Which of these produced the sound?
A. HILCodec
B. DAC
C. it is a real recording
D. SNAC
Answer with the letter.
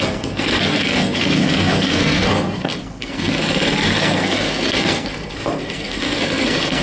D